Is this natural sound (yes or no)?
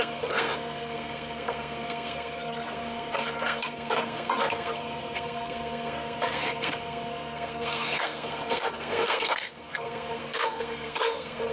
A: no